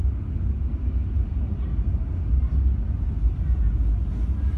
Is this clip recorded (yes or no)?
yes